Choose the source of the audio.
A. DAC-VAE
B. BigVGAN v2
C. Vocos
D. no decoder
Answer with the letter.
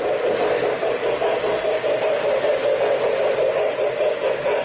D